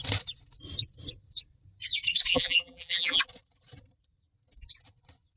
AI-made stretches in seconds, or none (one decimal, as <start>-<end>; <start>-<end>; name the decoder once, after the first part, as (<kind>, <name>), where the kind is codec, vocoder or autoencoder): 2.3-3.2 (vocoder, BigVGAN v2)